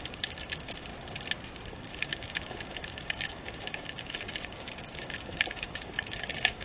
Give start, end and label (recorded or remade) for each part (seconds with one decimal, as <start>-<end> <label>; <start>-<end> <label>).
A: 0.0-0.9 remade; 0.9-1.7 recorded; 1.7-6.6 remade